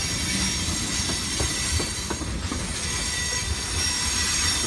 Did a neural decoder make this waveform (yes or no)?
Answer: no